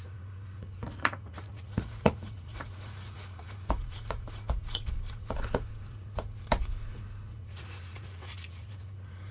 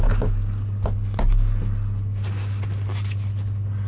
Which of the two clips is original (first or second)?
second